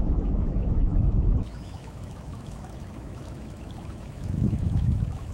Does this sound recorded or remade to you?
remade